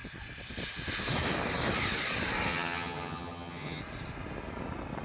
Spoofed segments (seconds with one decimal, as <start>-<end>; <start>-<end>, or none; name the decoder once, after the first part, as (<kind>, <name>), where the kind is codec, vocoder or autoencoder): 2.5-3.8 (vocoder, HiFi-GAN)